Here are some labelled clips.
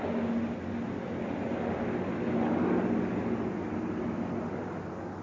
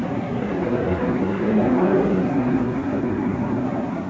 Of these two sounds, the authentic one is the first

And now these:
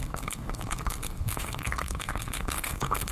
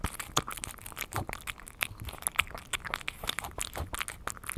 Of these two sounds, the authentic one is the second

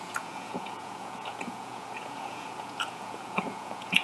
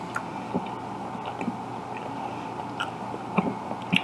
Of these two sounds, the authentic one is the second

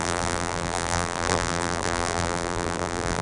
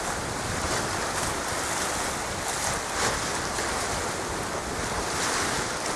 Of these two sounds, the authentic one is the second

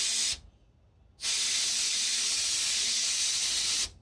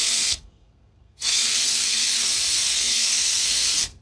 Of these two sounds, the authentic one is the first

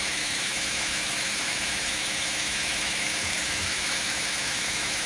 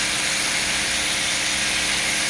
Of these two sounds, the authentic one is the second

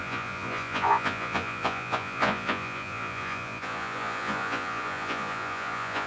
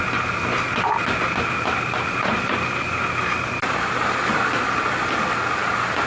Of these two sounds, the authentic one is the second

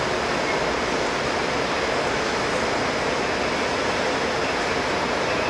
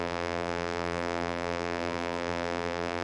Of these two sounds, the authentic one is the first